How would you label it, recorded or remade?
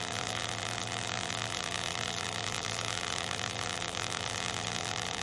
remade